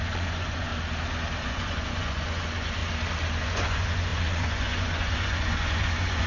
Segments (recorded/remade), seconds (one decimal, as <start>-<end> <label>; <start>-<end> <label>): 0.0-0.7 remade; 0.7-1.4 recorded; 1.4-2.8 remade; 2.8-3.4 recorded; 3.4-6.3 remade